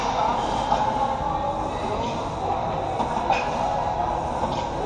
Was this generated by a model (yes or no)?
no